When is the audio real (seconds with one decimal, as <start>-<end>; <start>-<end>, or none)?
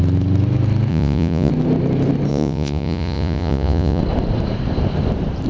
0.0-0.9; 1.5-2.3; 4.0-5.5